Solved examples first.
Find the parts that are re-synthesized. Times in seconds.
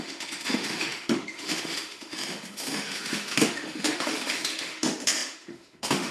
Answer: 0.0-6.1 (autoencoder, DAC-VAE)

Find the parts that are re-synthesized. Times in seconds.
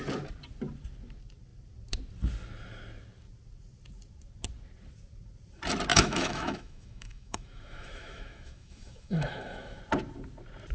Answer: 5.9-9.8 (autoencoder, DAC-VAE)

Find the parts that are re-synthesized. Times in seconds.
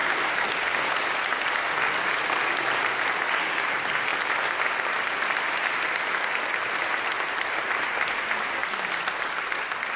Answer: none